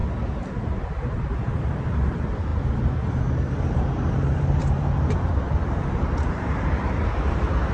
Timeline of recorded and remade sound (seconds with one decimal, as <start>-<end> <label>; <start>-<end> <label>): 0.0-0.6 recorded; 0.6-7.7 remade

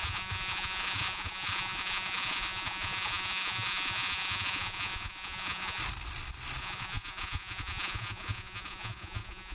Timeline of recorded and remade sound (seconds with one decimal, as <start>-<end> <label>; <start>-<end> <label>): 0.0-5.8 remade; 5.8-6.6 recorded; 6.6-9.5 remade

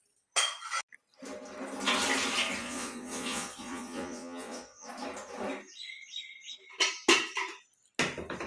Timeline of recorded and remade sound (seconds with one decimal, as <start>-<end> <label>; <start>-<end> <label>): 0.0-2.6 recorded; 2.6-4.9 remade; 4.9-8.5 recorded